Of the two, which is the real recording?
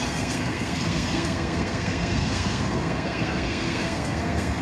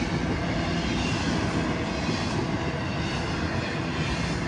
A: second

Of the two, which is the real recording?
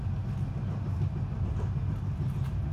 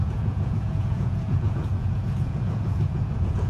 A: first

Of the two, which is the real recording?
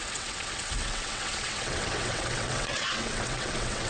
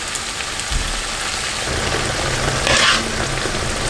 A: second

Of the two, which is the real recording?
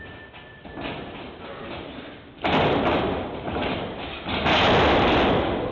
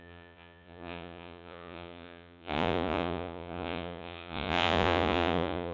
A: first